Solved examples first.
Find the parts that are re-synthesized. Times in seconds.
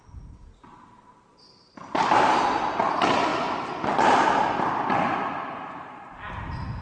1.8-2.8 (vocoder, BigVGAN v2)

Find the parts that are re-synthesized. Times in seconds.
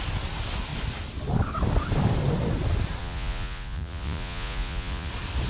3.0-5.1 (vocoder, Vocos)